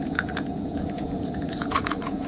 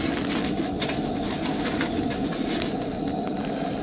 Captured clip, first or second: second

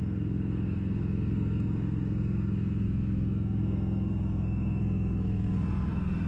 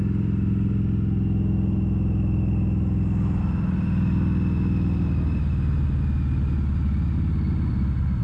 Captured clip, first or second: second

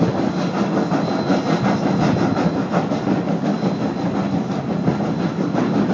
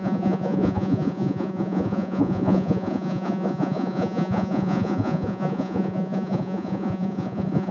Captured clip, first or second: first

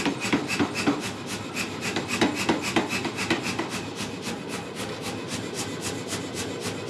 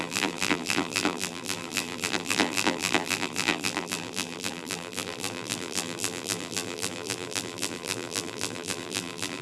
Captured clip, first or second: first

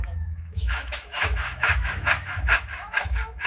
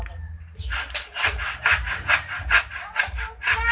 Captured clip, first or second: second